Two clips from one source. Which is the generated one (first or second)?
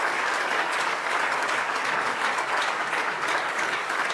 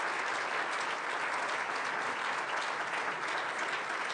first